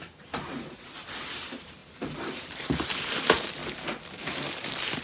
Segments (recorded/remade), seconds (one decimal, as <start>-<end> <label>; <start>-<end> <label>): 0.0-3.6 remade; 3.6-4.2 recorded; 4.2-5.0 remade